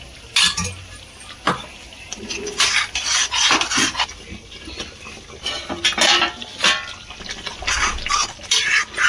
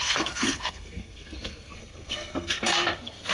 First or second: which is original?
first